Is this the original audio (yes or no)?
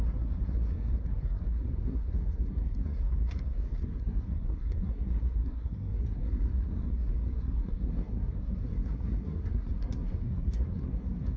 no